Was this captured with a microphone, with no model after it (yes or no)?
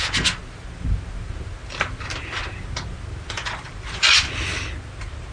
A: yes